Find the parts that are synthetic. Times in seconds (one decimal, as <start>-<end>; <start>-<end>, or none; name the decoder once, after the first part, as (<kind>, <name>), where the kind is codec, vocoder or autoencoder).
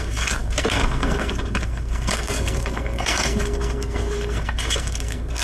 0.0-5.4 (codec, SNAC)